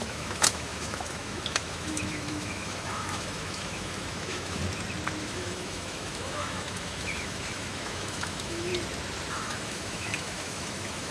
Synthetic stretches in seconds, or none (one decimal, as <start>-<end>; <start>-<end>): 0.0-4.6; 5.2-8.7; 9.3-11.1